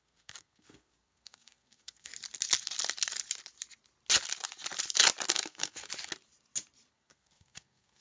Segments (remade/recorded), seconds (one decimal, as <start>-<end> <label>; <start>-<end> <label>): 0.0-2.1 remade; 2.1-5.3 recorded; 5.3-5.9 remade; 5.9-6.9 recorded; 6.9-8.0 remade